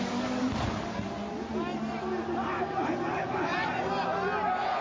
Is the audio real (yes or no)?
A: yes